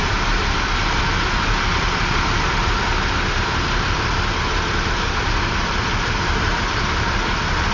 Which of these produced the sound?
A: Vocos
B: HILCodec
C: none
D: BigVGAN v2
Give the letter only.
D